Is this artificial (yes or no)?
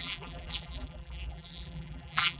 yes